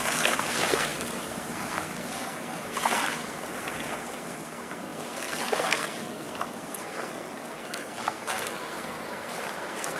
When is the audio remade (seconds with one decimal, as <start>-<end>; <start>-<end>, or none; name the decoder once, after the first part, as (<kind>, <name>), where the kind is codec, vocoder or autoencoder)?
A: 0.0-10.0 (codec, SNAC)